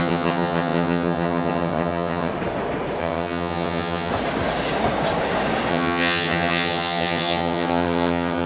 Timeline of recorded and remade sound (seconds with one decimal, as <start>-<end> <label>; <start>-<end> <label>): 0.0-2.3 remade; 2.3-3.0 recorded; 3.0-4.1 remade; 4.1-5.7 recorded; 5.7-8.5 remade